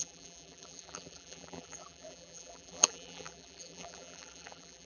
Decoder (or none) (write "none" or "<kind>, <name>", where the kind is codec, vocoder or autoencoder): vocoder, BigVGAN v2